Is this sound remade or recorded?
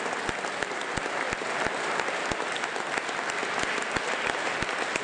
recorded